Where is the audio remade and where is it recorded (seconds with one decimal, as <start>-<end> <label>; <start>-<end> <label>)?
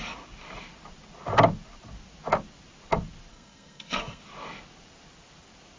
0.0-3.3 recorded; 3.3-4.2 remade; 4.2-5.8 recorded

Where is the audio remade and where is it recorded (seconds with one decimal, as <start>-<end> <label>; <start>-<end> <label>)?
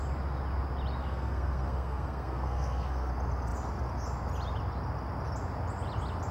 0.0-1.0 recorded; 1.0-3.1 remade; 3.1-6.3 recorded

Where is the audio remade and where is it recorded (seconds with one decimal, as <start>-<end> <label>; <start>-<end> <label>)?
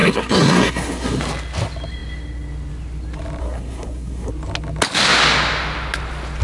0.0-1.2 remade; 1.2-3.4 recorded; 3.4-4.3 remade; 4.3-6.4 recorded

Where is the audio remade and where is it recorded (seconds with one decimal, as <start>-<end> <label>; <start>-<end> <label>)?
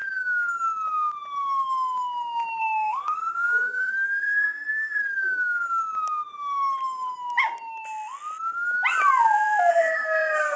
0.0-2.6 recorded; 2.6-5.0 remade; 5.0-9.7 recorded; 9.7-10.6 remade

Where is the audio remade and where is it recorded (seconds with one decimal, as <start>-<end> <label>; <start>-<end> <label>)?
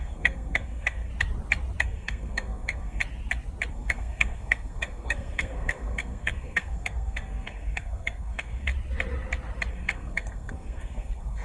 0.0-1.1 remade; 1.1-1.8 recorded; 1.8-3.0 remade; 3.0-3.7 recorded; 3.7-8.7 remade; 8.7-9.7 recorded; 9.7-11.4 remade